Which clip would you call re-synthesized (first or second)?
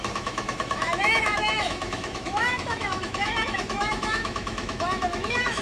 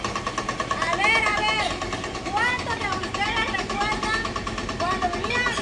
first